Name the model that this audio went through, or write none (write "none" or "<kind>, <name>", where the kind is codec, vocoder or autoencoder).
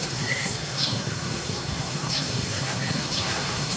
codec, SNAC